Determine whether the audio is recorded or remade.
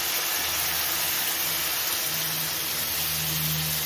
recorded